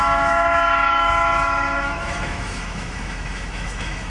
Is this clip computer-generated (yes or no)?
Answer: yes